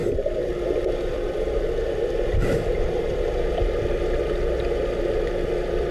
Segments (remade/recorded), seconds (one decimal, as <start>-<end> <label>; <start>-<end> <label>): 0.0-5.9 recorded

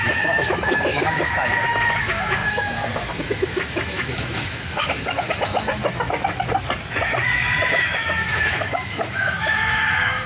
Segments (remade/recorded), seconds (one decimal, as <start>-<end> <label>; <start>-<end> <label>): 0.0-5.8 remade; 5.8-7.7 recorded; 7.7-10.3 remade

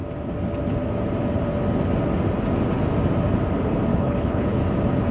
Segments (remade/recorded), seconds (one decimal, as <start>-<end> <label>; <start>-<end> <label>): 0.0-3.9 recorded; 3.9-4.6 remade; 4.6-5.1 recorded

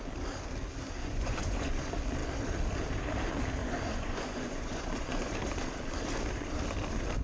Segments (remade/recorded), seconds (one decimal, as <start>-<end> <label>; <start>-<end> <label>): 0.0-1.0 recorded; 1.0-1.8 remade; 1.8-3.6 recorded; 3.6-5.3 remade; 5.3-7.2 recorded

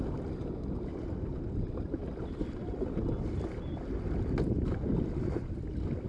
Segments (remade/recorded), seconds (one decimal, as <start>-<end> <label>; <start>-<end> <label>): 0.0-6.1 recorded